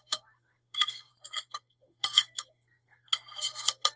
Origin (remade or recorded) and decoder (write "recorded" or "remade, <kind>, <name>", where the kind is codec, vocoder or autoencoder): remade, codec, SNAC